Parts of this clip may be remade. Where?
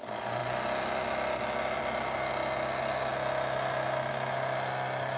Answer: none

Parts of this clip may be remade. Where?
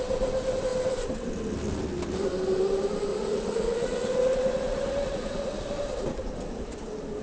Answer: 3.1-5.6 (vocoder, Vocos)